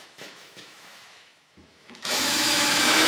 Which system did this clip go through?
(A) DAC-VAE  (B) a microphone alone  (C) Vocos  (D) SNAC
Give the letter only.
A